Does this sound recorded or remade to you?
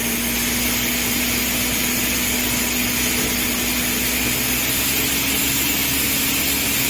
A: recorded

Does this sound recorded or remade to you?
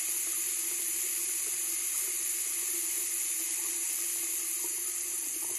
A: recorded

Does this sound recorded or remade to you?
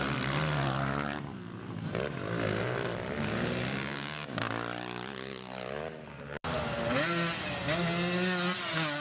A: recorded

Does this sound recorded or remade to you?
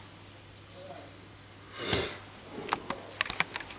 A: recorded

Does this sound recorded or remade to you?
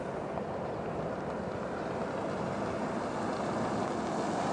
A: remade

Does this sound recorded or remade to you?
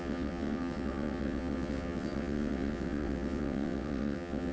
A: remade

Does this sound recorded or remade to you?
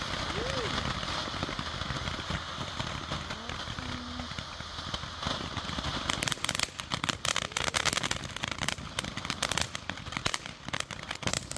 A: recorded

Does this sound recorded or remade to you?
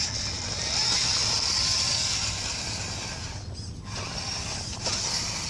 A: recorded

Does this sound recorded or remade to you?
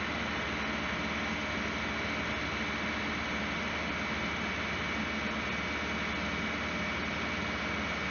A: recorded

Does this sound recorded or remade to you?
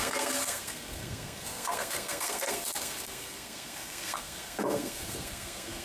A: remade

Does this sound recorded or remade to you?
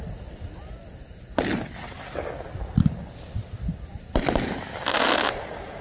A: recorded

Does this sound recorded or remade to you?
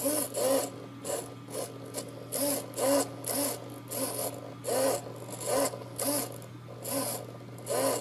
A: recorded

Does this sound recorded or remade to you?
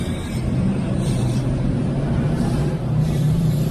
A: remade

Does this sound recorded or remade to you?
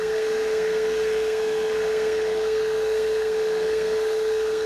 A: remade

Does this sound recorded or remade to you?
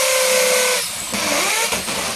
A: recorded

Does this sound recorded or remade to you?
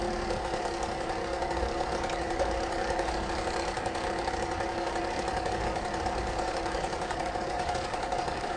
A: remade